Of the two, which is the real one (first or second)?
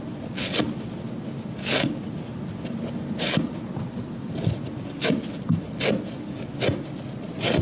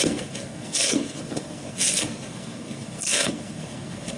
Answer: first